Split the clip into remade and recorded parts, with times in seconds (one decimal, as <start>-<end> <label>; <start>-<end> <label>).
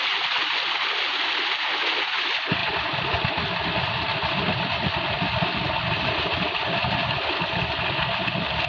0.0-8.7 recorded